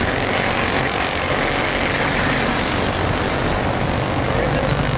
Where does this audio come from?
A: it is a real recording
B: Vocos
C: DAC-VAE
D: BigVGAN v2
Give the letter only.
A